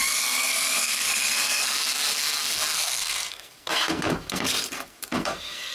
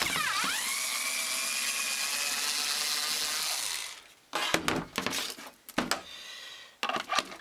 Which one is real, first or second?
second